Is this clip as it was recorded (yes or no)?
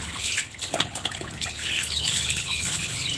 no